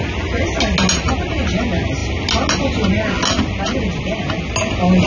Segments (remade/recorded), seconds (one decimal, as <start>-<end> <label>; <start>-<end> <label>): 0.0-5.1 recorded